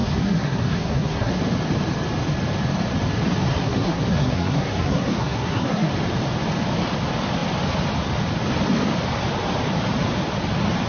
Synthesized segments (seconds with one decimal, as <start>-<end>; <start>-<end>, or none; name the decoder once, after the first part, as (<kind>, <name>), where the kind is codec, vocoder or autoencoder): 0.0-1.3 (codec, SNAC); 3.5-5.9